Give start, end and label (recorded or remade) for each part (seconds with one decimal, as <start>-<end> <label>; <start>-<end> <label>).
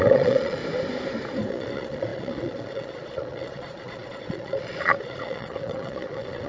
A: 0.0-0.6 remade; 0.6-1.5 recorded; 1.5-6.5 remade